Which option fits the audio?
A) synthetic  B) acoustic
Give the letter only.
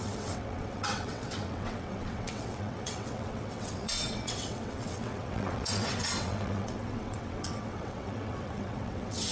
A